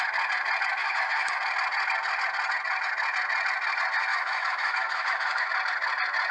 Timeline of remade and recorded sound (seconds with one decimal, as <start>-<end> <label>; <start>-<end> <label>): 0.0-0.8 recorded; 0.8-1.4 remade; 1.4-4.1 recorded; 4.1-5.5 remade; 5.5-6.3 recorded